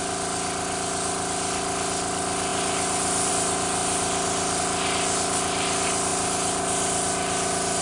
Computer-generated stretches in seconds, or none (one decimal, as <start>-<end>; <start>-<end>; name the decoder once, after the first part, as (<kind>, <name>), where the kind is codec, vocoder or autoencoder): none